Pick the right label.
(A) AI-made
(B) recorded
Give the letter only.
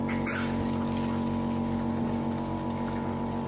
B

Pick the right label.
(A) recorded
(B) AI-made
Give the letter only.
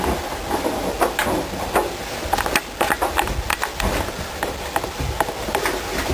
A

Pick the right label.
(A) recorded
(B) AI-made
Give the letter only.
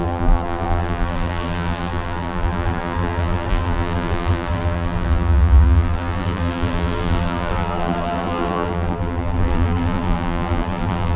B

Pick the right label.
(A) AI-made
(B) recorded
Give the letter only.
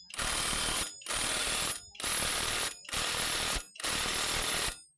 B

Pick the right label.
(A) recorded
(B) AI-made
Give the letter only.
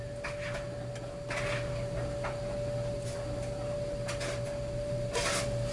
A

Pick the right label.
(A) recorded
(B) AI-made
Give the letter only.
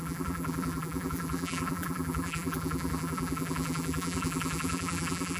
B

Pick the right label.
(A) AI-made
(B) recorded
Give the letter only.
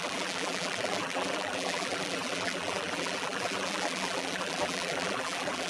A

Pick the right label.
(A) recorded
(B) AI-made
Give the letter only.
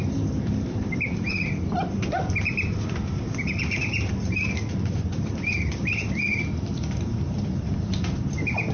B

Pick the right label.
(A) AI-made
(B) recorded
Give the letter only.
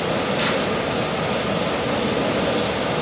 B